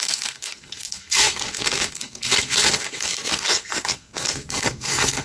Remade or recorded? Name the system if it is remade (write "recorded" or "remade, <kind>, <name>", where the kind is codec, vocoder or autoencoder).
remade, codec, SNAC